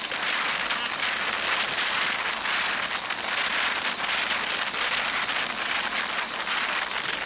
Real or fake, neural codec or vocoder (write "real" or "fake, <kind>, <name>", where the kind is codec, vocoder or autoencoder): real